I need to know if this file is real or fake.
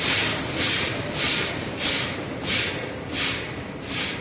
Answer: fake